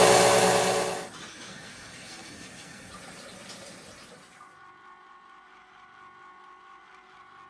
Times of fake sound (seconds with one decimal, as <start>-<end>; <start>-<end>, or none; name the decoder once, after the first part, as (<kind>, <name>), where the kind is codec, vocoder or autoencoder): 1.3-2.9 (codec, SNAC)